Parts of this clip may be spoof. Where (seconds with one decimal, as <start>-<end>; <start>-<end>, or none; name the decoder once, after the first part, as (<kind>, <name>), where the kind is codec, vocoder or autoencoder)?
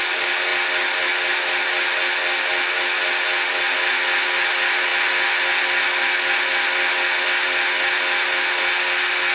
none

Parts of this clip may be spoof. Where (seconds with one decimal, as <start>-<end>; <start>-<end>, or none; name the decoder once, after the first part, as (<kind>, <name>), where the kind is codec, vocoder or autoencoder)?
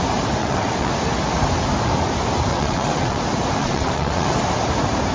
0.4-0.9 (vocoder, WaveNeXt); 2.5-3.2; 3.6-4.3